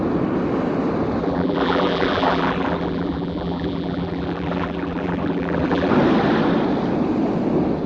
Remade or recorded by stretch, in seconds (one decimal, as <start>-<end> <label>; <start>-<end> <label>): 0.0-1.2 recorded; 1.2-5.9 remade; 5.9-7.9 recorded